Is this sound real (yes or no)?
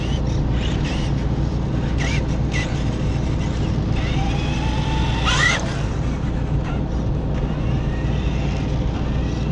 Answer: yes